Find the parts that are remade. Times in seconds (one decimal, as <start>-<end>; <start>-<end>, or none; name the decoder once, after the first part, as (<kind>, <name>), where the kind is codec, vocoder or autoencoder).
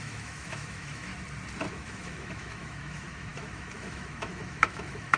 0.0-1.1 (autoencoder, DAC-VAE); 1.7-5.2